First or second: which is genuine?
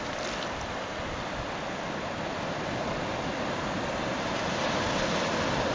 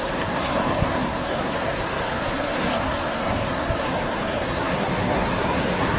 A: first